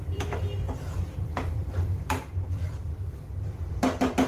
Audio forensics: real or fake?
fake